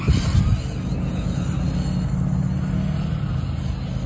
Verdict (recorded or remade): recorded